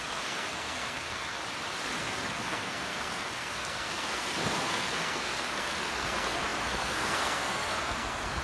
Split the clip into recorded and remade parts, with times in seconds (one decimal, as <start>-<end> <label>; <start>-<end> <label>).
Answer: 0.0-1.4 remade; 1.4-2.0 recorded; 2.0-8.4 remade

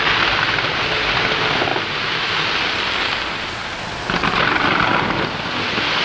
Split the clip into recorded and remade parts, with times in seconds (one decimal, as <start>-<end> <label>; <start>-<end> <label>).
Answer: 0.0-6.0 recorded

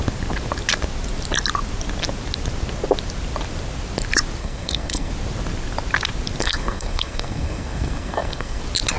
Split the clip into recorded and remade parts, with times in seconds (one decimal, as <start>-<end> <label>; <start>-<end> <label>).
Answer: 0.0-4.4 recorded; 4.4-5.1 remade; 5.1-6.4 recorded; 6.4-8.6 remade; 8.6-9.0 recorded